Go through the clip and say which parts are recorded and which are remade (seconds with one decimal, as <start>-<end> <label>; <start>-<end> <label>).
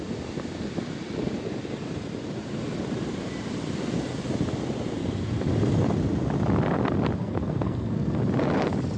0.0-7.2 recorded; 7.2-8.2 remade; 8.2-9.0 recorded